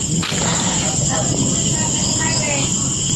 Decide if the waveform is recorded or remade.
recorded